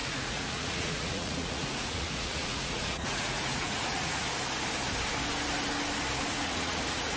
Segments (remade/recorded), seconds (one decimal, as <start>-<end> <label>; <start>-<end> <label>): 0.0-4.3 remade; 4.3-6.3 recorded; 6.3-7.2 remade

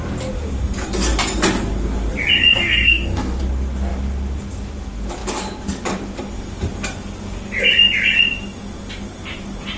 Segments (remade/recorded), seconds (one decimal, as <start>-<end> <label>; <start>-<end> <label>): 0.0-2.5 recorded; 2.5-3.4 remade; 3.4-9.8 recorded

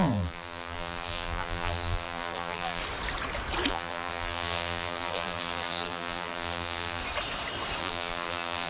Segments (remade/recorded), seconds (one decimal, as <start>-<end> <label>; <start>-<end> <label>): 0.0-2.8 remade; 2.8-3.7 recorded; 3.7-7.0 remade; 7.0-7.8 recorded; 7.8-8.7 remade

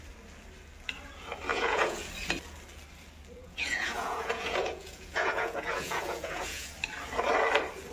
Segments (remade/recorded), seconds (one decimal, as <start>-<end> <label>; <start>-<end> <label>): 0.0-1.5 recorded; 1.5-2.1 remade; 2.1-3.4 recorded; 3.4-6.7 remade; 6.7-7.9 recorded

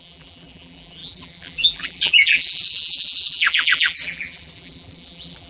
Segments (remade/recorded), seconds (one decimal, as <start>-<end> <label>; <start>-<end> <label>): 0.0-5.5 remade

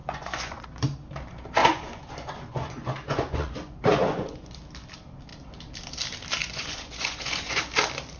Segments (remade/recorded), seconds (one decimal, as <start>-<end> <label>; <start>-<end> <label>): 0.0-0.8 remade; 0.8-1.6 recorded; 1.6-4.5 remade; 4.5-6.4 recorded; 6.4-7.6 remade; 7.6-8.2 recorded

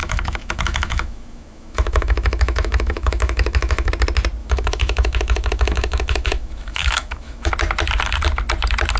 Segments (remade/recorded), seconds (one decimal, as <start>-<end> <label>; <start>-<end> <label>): 0.0-3.9 remade; 3.9-4.4 recorded; 4.4-7.5 remade; 7.5-9.0 recorded